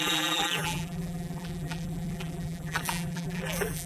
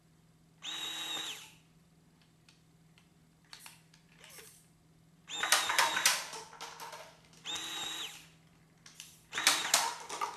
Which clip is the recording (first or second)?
second